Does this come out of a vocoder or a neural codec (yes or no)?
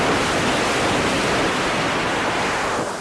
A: no